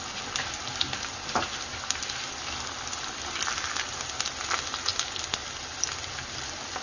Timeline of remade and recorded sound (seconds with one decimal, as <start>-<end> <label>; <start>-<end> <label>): 0.0-6.8 recorded